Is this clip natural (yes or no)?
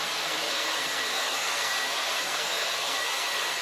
no